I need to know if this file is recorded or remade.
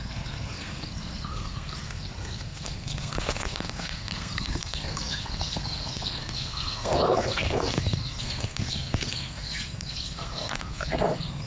remade